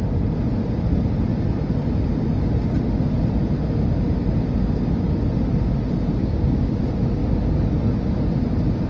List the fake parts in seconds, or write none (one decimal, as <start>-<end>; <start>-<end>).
6.2-6.8